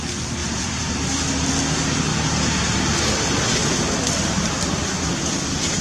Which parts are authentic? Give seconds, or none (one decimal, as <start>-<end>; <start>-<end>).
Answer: 0.0-0.4; 1.5-5.8